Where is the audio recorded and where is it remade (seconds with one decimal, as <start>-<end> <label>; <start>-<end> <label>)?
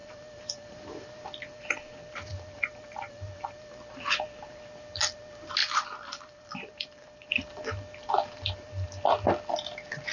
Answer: 0.0-3.9 remade; 3.9-5.6 recorded; 5.6-7.3 remade; 7.3-10.1 recorded